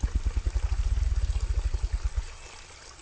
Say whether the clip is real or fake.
real